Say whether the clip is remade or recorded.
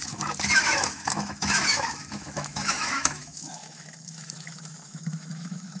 remade